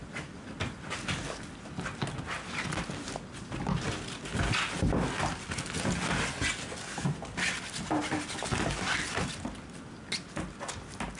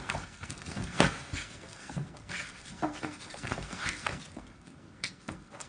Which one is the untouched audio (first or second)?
first